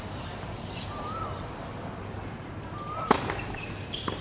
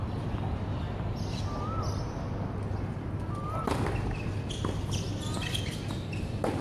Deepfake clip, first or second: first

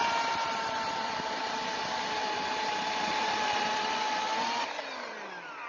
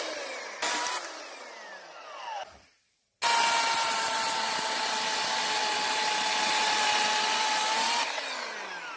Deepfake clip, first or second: first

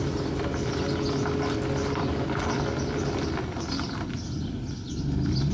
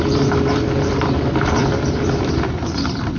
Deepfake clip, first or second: second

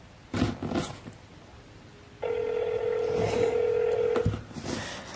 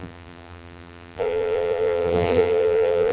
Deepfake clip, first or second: second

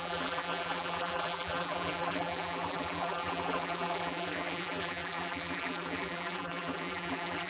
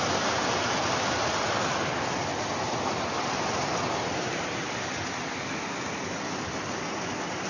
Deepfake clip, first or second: first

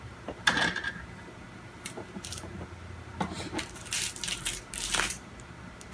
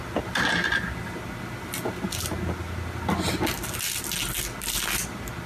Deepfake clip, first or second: first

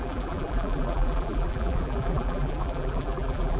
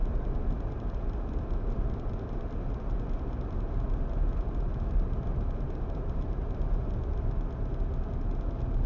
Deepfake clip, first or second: first